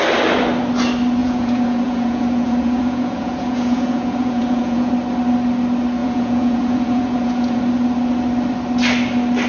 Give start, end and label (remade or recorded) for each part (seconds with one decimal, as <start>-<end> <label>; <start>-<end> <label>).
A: 0.0-1.2 recorded; 1.2-4.9 remade; 4.9-6.0 recorded; 6.0-7.6 remade; 7.6-9.5 recorded